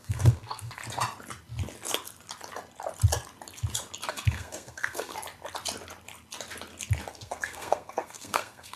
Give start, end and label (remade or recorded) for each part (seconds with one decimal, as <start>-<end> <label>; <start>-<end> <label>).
0.0-0.8 remade; 0.8-4.1 recorded; 4.1-5.1 remade; 5.1-7.1 recorded; 7.1-8.8 remade